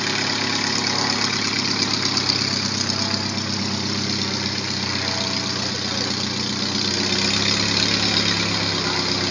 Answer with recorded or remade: recorded